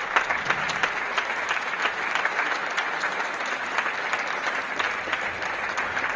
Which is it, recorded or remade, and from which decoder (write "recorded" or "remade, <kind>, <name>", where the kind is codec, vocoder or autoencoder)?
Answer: recorded